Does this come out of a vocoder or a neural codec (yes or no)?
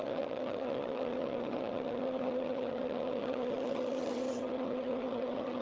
yes